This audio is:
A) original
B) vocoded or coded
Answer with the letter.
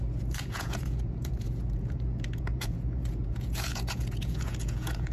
B